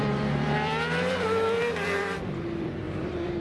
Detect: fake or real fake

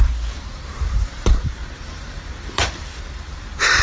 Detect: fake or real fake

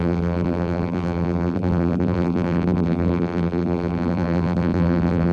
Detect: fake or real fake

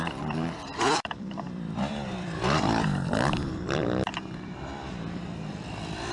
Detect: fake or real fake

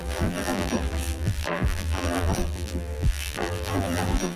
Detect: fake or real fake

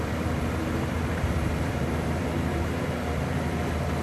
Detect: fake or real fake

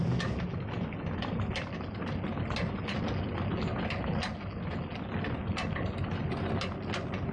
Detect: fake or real real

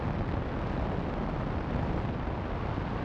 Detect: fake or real real